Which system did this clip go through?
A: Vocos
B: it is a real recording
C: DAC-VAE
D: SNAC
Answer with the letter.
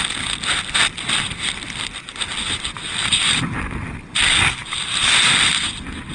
B